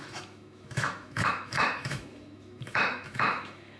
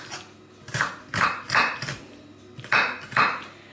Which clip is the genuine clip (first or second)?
second